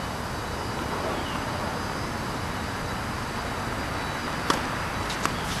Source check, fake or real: real